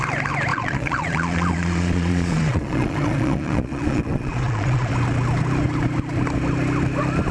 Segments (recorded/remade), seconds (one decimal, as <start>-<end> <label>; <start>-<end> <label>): 0.0-0.5 recorded; 0.5-4.9 remade; 4.9-7.3 recorded